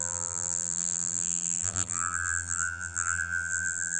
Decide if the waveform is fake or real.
fake